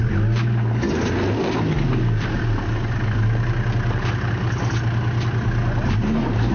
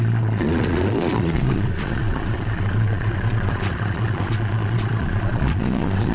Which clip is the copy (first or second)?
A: second